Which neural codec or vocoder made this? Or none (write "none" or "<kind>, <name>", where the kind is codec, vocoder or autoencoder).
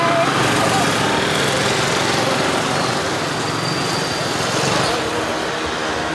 none